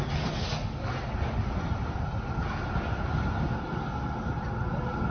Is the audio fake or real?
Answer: real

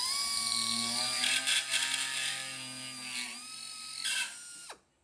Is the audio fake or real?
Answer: real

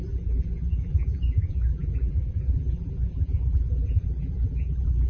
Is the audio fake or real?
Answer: fake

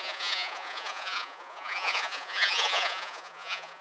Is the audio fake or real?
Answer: fake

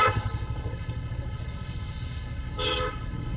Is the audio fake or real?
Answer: fake